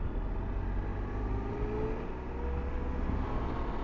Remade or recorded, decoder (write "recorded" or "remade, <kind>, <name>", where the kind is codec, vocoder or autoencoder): recorded